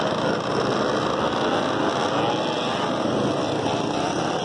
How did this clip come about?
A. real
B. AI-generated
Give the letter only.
A